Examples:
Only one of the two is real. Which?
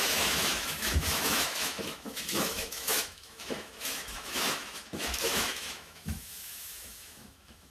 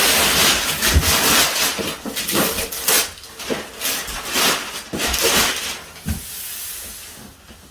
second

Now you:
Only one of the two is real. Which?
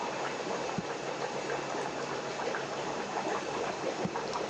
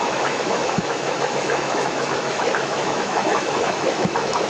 first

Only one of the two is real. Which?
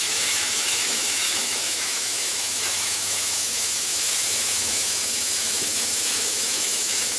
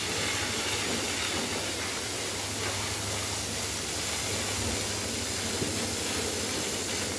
second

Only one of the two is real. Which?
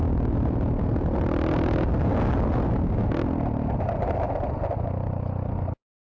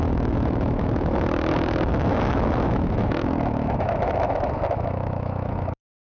first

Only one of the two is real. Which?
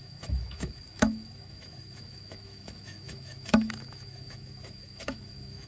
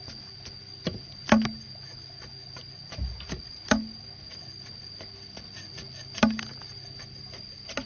second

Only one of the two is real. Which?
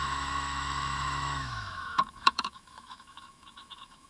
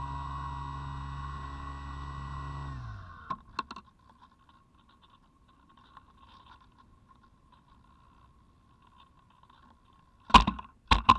second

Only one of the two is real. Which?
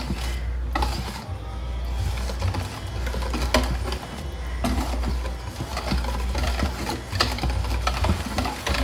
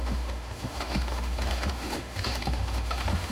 first